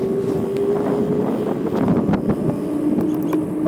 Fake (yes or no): no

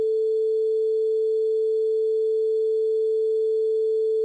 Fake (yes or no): yes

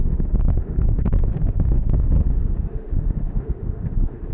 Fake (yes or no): yes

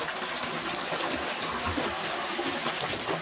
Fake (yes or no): no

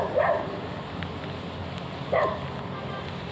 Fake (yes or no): no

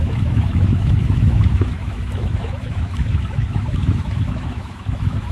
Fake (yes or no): yes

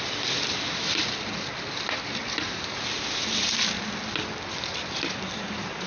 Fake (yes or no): no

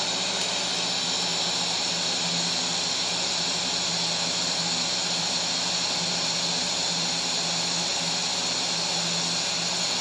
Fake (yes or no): no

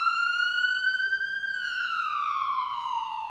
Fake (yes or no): yes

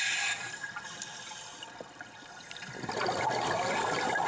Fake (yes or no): no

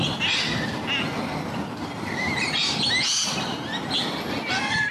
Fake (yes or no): no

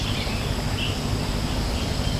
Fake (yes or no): no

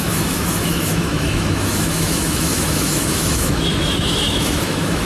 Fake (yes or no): yes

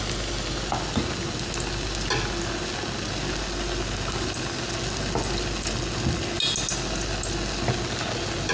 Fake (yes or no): no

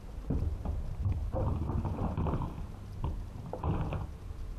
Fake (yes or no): no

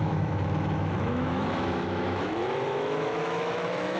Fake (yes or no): yes